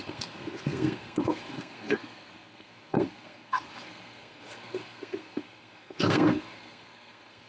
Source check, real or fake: fake